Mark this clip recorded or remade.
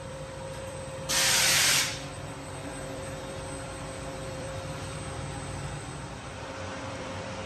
remade